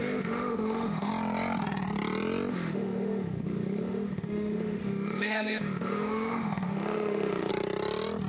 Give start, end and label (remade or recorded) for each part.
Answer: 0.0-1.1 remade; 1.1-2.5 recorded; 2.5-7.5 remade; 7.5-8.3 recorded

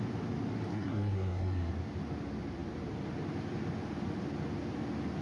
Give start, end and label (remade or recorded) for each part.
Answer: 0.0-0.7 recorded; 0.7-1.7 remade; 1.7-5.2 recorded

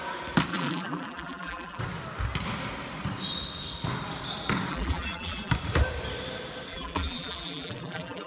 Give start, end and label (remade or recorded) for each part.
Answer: 0.0-0.5 recorded; 0.5-1.8 remade; 1.8-4.7 recorded; 4.7-5.5 remade; 5.5-6.7 recorded; 6.7-8.3 remade

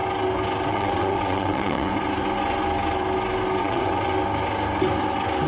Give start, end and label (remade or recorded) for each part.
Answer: 0.0-0.7 recorded; 0.7-1.9 remade; 1.9-3.6 recorded; 3.6-4.1 remade; 4.1-5.5 recorded

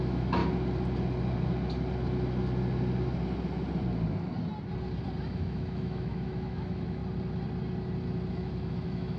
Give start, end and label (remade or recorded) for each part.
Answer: 0.0-0.4 remade; 0.4-5.2 recorded; 5.2-7.0 remade; 7.0-8.3 recorded; 8.3-9.2 remade

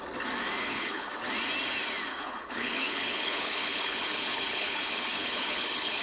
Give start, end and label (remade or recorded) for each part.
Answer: 0.0-0.6 recorded; 0.6-1.1 remade; 1.1-2.1 recorded; 2.1-6.0 remade

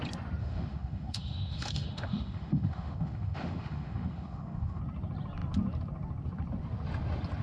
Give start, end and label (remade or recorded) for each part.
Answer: 0.0-0.4 recorded; 0.4-4.8 remade; 4.8-7.4 recorded

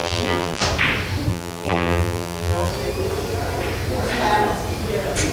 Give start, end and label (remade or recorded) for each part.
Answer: 0.0-0.6 remade; 0.6-1.3 recorded; 1.3-2.7 remade; 2.7-5.3 recorded